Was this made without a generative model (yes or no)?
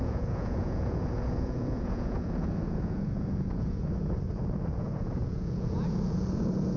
no